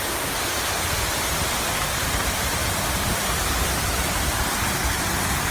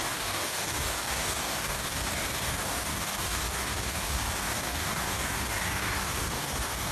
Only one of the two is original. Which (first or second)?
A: first